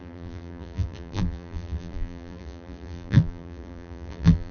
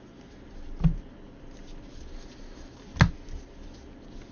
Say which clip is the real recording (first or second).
second